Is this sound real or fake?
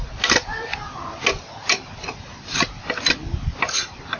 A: real